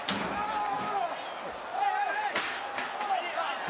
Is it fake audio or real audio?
real